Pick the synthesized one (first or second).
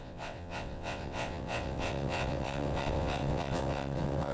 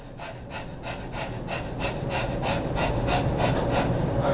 first